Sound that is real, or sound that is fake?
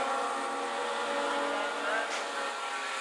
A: real